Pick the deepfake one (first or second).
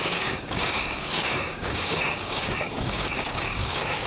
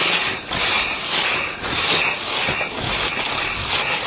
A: first